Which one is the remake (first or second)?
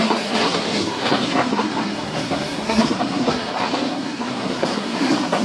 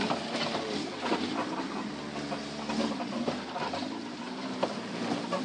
first